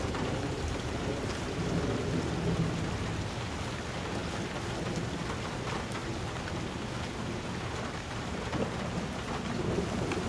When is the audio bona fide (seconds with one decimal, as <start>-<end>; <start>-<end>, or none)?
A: 0.0-10.3